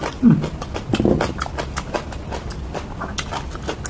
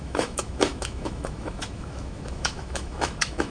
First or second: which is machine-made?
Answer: second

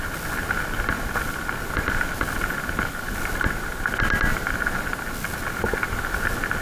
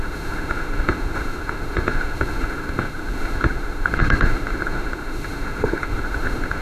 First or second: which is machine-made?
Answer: second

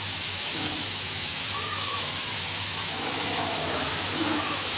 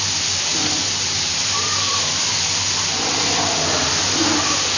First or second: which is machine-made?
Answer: first